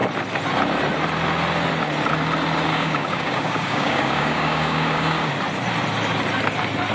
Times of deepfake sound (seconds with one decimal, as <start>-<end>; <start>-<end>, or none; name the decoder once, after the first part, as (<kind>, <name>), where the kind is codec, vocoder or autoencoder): 2.7-5.3 (codec, DAC)